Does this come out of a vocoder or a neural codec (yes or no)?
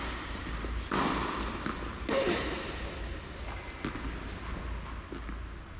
no